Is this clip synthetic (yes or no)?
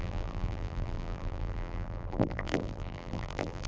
yes